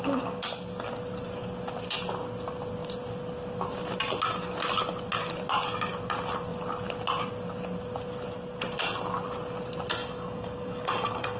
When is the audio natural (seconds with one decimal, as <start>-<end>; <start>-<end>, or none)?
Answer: 0.0-10.0